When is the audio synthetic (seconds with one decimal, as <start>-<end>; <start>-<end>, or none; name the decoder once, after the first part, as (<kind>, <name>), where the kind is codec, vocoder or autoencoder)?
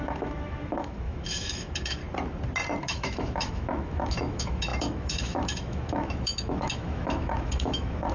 0.0-2.0 (autoencoder, DAC-VAE); 2.8-8.1